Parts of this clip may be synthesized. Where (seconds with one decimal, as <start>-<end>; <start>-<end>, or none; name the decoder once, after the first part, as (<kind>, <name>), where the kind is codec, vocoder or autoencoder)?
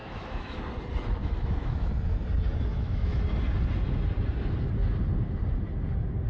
0.0-0.6 (autoencoder, DAC-VAE); 1.2-1.9; 2.7-3.2